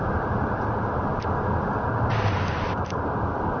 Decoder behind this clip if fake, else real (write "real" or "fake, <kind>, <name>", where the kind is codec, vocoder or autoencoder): real